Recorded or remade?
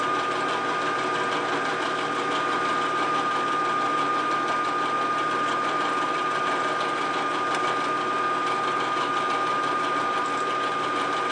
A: recorded